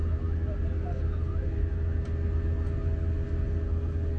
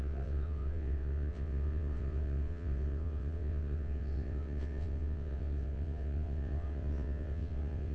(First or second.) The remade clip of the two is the second